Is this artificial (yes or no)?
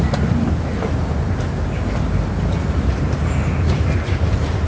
no